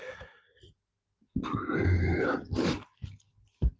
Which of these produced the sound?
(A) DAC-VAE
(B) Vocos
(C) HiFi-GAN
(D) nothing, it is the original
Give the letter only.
D